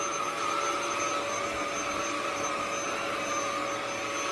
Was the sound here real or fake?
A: real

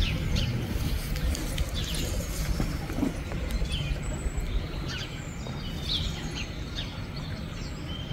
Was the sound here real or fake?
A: real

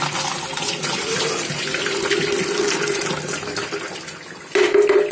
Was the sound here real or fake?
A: real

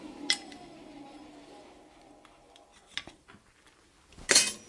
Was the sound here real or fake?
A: real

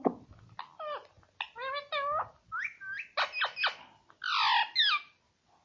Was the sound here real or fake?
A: real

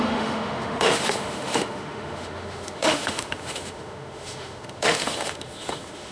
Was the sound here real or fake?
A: fake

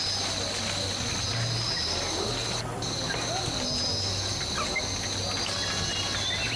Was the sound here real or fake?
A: real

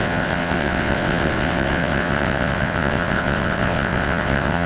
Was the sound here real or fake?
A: fake